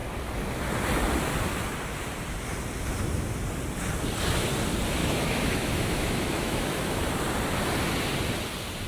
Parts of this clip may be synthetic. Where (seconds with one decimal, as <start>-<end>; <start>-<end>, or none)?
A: 5.0-7.0